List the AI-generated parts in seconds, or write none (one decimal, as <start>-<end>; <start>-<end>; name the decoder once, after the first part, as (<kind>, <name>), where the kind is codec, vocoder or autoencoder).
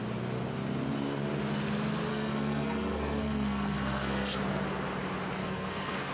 2.1-4.4 (codec, SNAC); 5.4-6.1